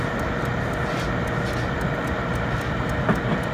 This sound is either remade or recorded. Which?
recorded